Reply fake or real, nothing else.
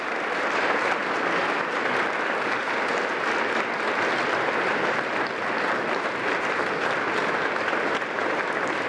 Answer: real